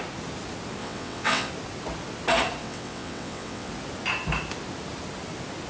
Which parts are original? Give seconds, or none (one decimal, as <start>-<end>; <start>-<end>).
0.0-0.8; 1.5-2.6; 3.7-5.7